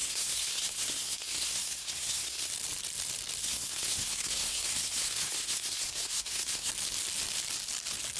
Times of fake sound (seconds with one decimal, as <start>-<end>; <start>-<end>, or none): 0.0-2.5; 3.4-6.7